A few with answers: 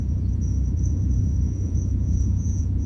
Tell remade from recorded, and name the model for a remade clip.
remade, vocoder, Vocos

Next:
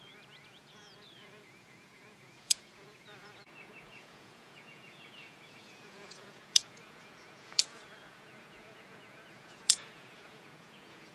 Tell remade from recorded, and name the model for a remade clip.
remade, vocoder, Vocos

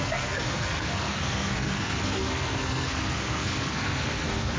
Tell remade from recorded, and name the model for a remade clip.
remade, codec, SNAC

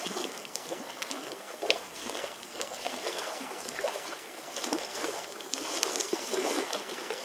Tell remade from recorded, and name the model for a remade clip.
remade, codec, SNAC